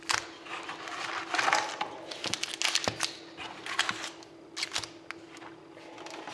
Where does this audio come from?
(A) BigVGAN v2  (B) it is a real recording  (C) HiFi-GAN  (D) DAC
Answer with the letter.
B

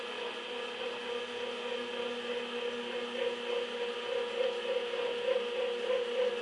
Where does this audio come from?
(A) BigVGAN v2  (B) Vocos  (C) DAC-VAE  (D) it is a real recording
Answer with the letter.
D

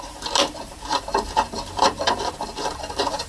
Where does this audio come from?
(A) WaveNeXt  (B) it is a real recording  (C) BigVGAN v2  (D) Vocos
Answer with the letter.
C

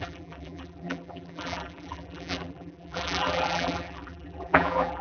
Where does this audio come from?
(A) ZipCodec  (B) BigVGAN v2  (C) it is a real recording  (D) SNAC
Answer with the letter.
B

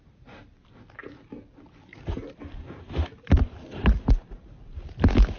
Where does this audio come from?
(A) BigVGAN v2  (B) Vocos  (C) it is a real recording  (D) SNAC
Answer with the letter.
C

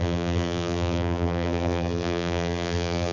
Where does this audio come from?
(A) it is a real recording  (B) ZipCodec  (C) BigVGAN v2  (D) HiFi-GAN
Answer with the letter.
C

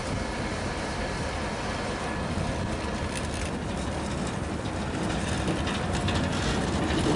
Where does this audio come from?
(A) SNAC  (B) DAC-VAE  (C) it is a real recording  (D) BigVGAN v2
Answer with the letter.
C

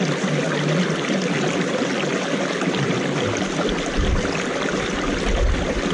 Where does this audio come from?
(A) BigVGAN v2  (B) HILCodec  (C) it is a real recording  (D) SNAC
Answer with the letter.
C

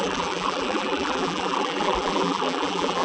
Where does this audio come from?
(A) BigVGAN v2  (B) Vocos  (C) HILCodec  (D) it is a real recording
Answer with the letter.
A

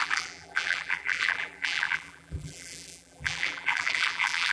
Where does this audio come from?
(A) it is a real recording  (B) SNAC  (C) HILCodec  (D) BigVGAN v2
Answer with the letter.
D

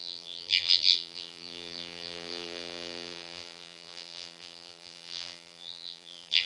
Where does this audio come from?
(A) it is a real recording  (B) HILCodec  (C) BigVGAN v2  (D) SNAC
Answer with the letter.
C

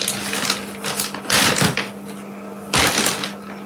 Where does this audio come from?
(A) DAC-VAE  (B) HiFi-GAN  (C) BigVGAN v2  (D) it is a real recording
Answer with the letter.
D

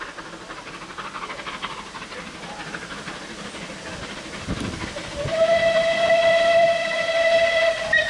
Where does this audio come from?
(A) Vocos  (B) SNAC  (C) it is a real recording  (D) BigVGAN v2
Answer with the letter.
D